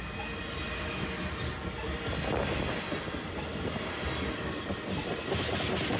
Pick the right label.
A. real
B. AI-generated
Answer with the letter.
A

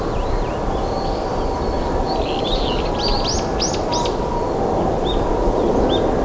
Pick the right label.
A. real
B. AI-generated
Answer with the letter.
A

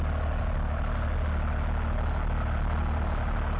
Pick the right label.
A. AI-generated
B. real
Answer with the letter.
B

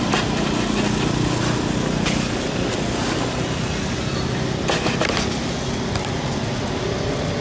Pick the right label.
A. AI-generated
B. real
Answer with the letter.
B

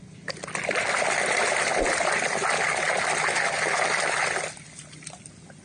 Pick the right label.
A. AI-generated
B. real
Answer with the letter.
B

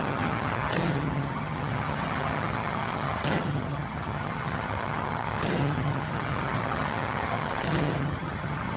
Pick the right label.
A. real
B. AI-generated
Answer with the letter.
B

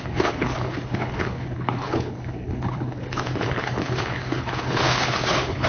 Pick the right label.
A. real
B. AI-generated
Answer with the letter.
B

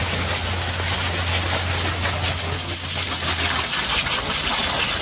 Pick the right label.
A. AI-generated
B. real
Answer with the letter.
B